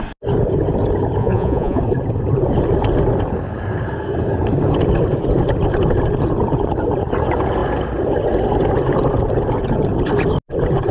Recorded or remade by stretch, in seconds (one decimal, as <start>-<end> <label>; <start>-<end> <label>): 0.0-1.2 recorded; 1.2-1.8 remade; 1.8-10.9 recorded